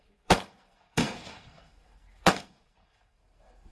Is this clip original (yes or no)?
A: no